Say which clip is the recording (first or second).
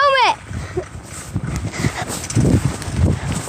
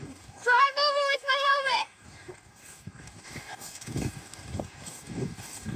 first